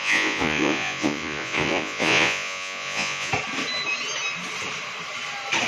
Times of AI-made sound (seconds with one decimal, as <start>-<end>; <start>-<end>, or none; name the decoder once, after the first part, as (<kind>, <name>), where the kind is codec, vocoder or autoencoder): 0.0-3.3 (vocoder, Vocos)